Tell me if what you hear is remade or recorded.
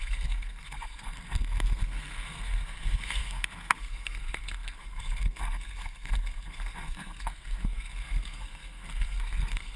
remade